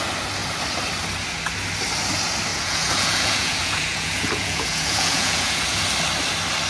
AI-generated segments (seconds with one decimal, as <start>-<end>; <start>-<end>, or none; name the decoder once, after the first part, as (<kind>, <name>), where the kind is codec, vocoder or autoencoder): 2.5-5.8 (vocoder, Vocos)